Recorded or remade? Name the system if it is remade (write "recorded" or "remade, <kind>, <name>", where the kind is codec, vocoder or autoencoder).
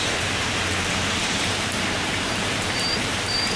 remade, vocoder, BigVGAN v2